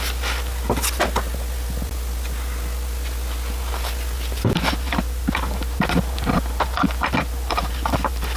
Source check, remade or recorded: recorded